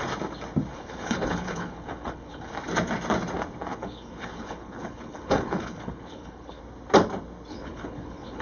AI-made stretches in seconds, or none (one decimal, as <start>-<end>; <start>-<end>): 0.7-2.5; 3.7-6.6; 7.5-8.4